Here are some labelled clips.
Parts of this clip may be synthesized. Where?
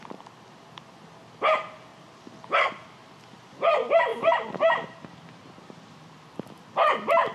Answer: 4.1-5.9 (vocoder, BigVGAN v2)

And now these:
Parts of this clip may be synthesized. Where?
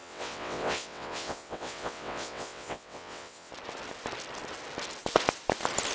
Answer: 0.0-3.5 (vocoder, WaveNeXt)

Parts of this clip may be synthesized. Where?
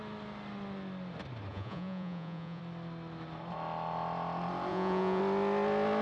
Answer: 1.5-2.6 (vocoder, Vocos); 4.7-5.2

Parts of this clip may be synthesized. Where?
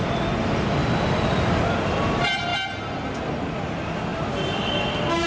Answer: 0.8-1.6 (vocoder, BigVGAN v2); 4.1-4.7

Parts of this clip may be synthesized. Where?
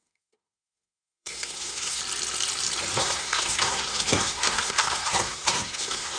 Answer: 0.0-2.0 (codec, SNAC); 3.0-6.2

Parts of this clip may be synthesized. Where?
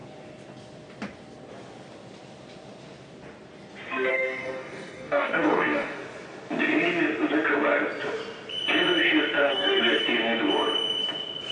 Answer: 4.1-6.0 (codec, DAC); 9.4-10.0